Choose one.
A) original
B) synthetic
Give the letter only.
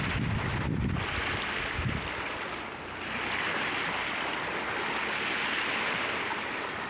A